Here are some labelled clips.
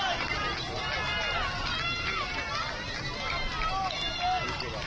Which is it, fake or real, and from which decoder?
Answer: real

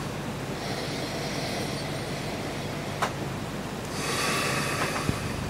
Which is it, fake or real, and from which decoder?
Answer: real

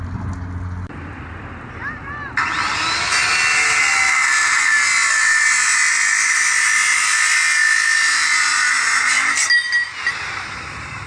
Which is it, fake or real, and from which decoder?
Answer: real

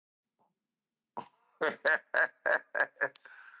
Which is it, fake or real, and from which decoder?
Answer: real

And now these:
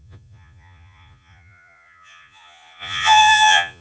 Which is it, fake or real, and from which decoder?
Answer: fake, vocoder, Vocos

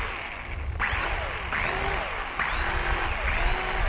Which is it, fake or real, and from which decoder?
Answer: real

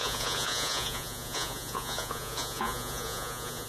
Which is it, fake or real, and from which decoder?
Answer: fake, vocoder, Vocos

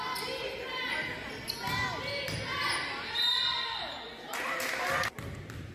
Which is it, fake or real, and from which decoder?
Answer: real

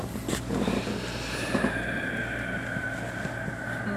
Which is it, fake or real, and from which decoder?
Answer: real